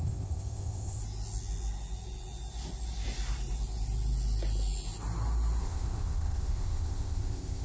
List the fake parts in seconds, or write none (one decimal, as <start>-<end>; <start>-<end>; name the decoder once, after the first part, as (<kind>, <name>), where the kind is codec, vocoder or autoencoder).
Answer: 0.0-1.0 (codec, ZipCodec); 5.6-7.6